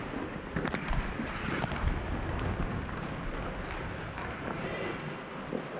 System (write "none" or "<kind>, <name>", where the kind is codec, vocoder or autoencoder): none